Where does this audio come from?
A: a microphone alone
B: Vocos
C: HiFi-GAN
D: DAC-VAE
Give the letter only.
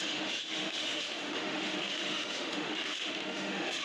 D